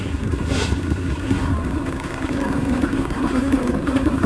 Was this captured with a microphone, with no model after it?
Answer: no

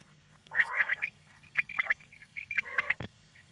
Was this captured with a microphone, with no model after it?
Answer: no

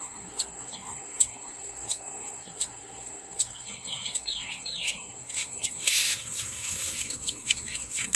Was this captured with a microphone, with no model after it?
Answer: no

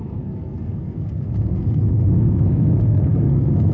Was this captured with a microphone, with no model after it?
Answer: no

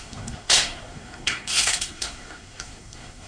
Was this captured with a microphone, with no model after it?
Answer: no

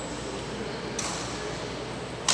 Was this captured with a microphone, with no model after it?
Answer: yes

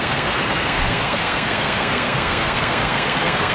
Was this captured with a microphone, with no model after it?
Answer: no